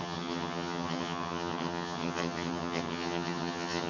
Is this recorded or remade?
remade